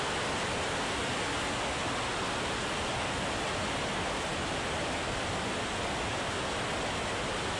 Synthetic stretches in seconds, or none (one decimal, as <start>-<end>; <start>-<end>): none